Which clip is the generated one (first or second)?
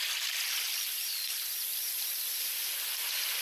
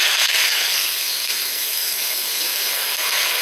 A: second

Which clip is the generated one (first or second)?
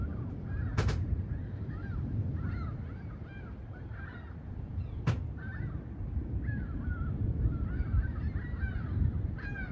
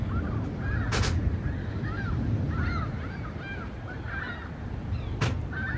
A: first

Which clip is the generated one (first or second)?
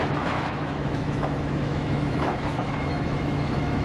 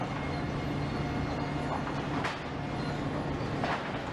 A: first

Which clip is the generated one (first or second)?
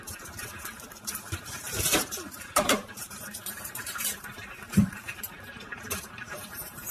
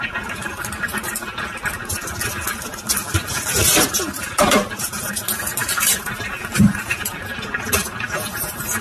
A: first